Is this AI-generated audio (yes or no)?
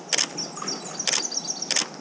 no